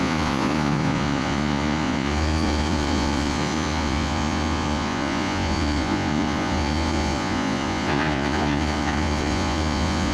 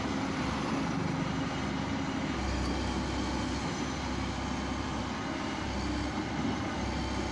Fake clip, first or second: first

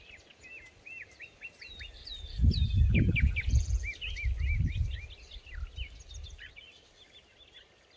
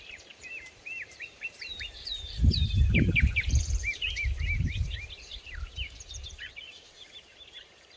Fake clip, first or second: second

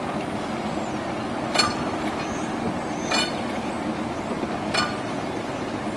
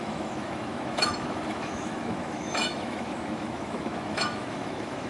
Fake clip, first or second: second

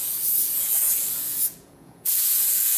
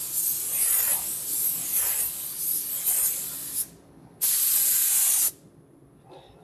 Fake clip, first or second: first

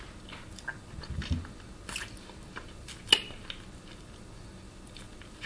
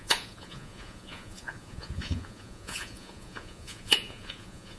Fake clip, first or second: second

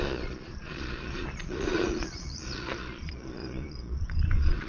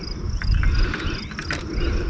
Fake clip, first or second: first